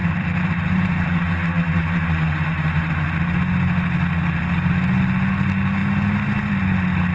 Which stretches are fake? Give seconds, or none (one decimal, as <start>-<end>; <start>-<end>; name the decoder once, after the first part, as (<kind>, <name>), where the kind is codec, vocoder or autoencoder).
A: 0.0-1.8 (vocoder, BigVGAN v2)